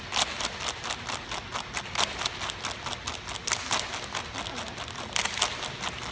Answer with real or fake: real